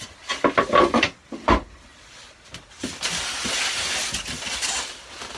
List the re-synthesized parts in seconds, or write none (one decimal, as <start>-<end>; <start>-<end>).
none

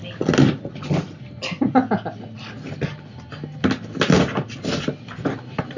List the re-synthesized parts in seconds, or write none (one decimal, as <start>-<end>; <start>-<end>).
none